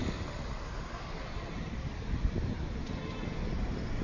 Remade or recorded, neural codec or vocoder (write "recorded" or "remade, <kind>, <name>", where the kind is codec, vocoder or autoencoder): recorded